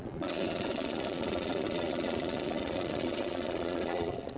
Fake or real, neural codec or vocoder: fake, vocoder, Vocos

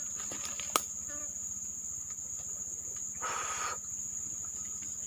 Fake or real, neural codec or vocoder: real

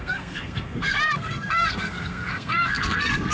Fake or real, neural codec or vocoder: fake, codec, SNAC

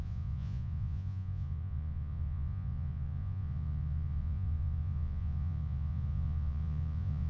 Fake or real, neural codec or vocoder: fake, vocoder, Vocos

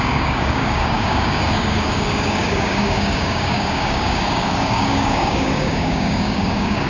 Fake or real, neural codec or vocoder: fake, codec, DAC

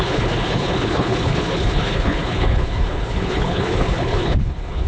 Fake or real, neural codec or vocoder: fake, codec, HILCodec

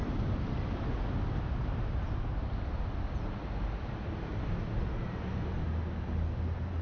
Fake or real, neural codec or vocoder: real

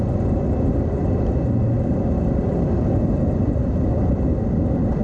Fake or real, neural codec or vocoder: real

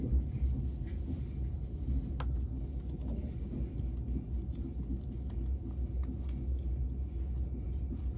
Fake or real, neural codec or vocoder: real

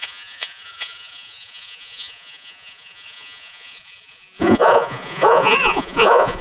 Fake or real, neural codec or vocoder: fake, vocoder, Vocos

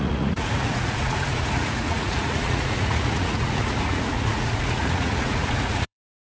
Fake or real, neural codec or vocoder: fake, vocoder, Vocos